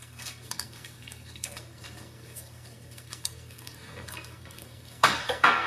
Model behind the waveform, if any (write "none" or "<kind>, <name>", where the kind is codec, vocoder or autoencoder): codec, SNAC